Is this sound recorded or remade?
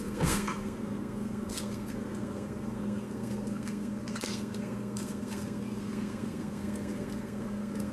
remade